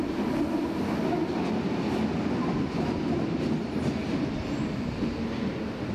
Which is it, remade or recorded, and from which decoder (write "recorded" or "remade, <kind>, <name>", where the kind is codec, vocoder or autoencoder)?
recorded